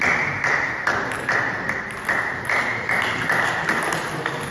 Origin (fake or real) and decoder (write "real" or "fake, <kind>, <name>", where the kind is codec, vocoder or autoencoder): real